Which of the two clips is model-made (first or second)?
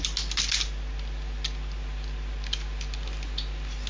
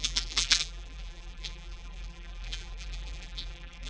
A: second